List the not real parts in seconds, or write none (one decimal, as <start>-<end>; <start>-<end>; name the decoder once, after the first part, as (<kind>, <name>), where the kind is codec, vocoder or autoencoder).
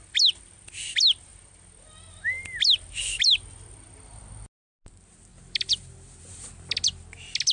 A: 5.3-6.5 (vocoder, BigVGAN v2)